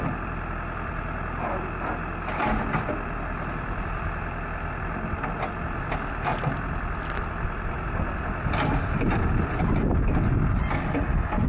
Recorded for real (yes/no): yes